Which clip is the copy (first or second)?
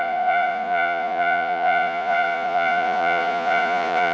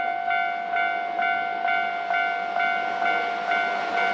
first